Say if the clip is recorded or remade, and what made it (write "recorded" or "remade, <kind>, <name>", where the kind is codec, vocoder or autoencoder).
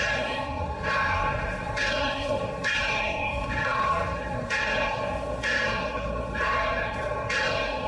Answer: remade, codec, SNAC